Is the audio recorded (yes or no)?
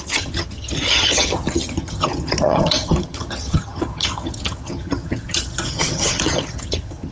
no